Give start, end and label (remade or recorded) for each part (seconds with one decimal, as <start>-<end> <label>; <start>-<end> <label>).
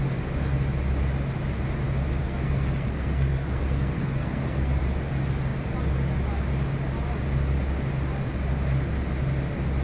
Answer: 0.0-2.2 recorded; 2.2-4.8 remade; 4.8-9.8 recorded